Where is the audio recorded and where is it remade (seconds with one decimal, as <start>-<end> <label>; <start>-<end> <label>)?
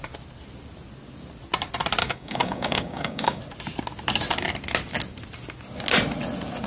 0.0-2.0 recorded; 2.0-3.4 remade; 3.4-6.7 recorded